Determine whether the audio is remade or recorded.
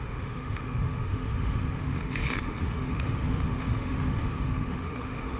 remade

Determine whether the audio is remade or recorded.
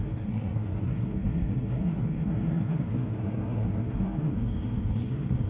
remade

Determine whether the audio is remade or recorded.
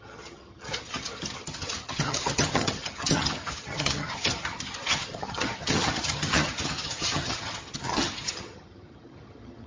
remade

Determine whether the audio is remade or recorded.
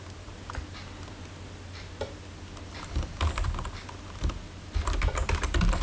recorded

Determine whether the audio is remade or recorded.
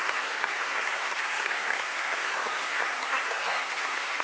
remade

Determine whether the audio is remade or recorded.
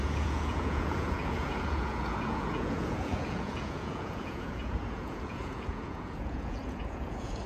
remade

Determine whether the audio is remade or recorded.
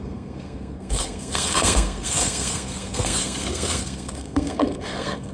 remade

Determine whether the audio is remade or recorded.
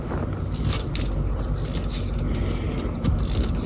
recorded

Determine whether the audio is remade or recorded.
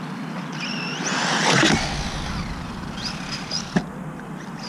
recorded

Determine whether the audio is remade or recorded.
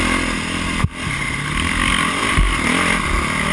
recorded